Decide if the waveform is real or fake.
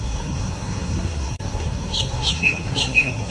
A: fake